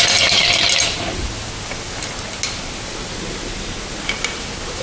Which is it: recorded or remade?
recorded